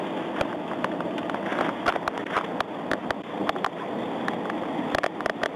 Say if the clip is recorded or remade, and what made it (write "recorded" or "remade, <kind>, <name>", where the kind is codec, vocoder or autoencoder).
recorded